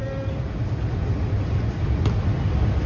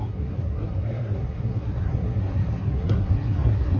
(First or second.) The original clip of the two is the first